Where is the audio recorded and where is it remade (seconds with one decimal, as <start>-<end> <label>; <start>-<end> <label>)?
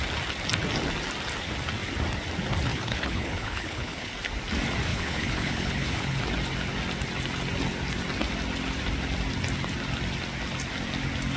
0.0-2.7 recorded; 2.7-4.1 remade; 4.1-4.9 recorded; 4.9-6.2 remade; 6.2-11.4 recorded